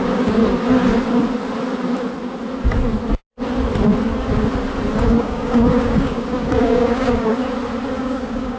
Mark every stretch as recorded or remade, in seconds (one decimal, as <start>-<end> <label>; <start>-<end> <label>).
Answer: 0.0-0.4 remade; 0.4-5.0 recorded; 5.0-7.4 remade; 7.4-8.0 recorded; 8.0-8.6 remade